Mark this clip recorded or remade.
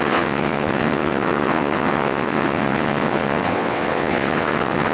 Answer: remade